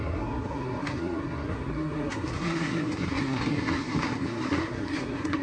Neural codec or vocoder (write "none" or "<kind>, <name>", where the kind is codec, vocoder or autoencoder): codec, SNAC